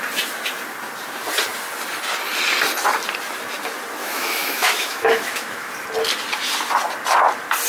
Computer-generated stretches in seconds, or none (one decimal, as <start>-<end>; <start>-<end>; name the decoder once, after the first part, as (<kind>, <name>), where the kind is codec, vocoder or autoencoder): 4.0-5.7 (autoencoder, DAC-VAE)